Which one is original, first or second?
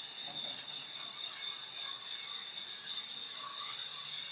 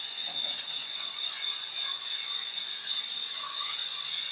first